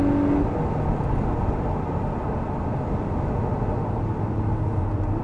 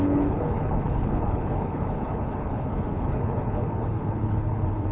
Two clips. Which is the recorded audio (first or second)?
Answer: first